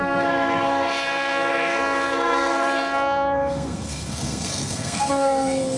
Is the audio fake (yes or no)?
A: yes